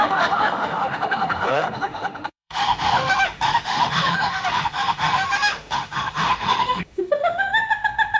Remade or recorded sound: remade